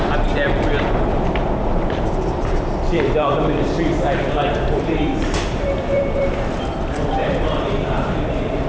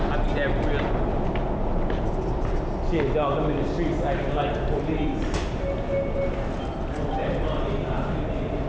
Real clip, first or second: second